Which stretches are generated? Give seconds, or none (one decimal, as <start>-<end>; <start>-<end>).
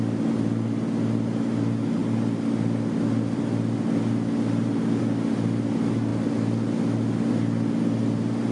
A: none